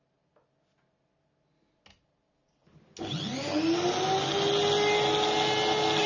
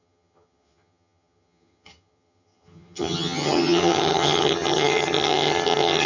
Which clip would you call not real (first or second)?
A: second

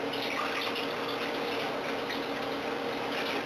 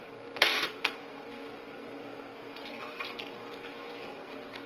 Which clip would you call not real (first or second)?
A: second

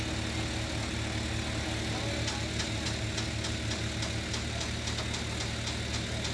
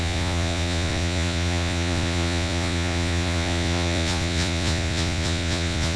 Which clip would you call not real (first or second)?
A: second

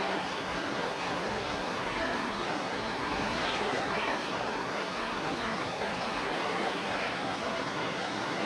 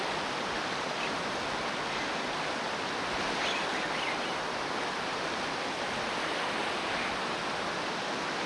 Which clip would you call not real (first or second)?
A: first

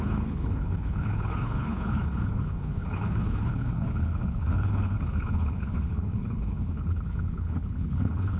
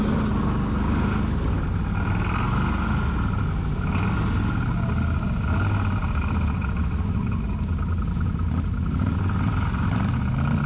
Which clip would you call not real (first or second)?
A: first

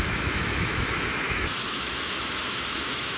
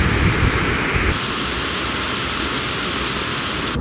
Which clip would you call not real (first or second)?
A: first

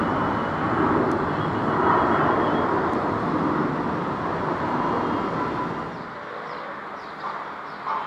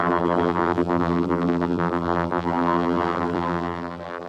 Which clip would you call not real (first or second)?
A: second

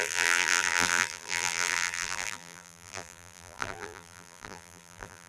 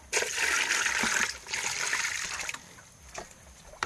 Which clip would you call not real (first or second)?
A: first